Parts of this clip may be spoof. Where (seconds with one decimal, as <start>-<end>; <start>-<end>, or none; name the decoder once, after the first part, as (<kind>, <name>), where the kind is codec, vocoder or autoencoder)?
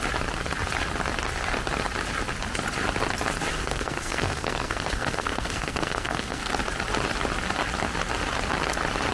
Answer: 3.5-6.5 (codec, SNAC)